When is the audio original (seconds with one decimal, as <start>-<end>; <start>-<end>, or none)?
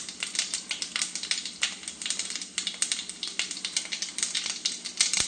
0.0-5.3